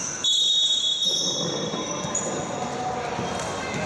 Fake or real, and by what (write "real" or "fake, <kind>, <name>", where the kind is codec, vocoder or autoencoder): real